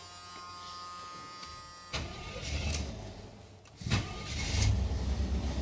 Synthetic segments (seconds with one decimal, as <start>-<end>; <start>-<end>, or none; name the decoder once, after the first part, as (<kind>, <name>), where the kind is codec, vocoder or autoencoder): none

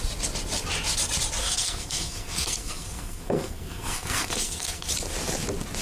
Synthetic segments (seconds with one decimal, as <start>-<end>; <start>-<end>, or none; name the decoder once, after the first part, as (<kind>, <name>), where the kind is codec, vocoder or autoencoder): 1.4-4.9 (codec, SNAC)

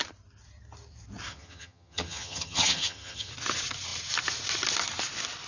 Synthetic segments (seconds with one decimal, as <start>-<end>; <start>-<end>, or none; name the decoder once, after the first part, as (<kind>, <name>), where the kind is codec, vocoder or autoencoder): 1.3-3.3 (vocoder, HiFi-GAN)

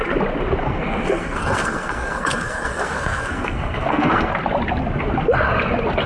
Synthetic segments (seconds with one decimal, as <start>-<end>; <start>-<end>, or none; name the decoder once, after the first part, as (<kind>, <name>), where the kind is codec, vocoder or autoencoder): 0.6-4.3 (codec, SNAC)